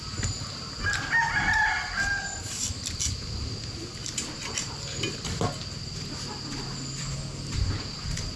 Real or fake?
real